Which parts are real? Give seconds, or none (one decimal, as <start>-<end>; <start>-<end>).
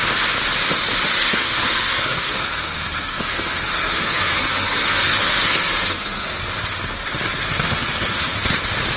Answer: 0.0-1.2; 6.4-7.4; 8.3-9.0